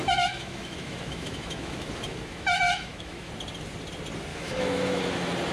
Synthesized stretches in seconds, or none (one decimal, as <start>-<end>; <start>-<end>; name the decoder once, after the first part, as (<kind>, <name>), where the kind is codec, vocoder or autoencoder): 0.0-3.3 (autoencoder, DAC-VAE); 4.3-5.0